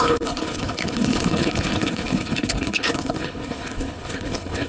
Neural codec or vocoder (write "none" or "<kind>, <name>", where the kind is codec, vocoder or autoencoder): codec, HILCodec